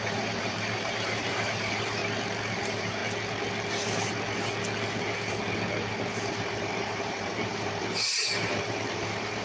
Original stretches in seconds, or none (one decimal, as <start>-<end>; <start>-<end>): 2.0-2.6; 3.0-6.3